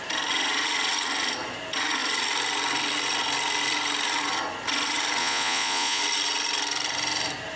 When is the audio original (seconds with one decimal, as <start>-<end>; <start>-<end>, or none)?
0.0-5.2; 6.0-7.6